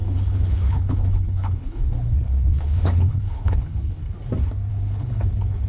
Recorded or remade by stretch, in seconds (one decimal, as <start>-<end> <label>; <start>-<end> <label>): 0.0-4.0 remade; 4.0-4.7 recorded; 4.7-5.7 remade